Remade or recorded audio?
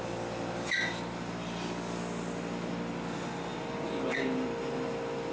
recorded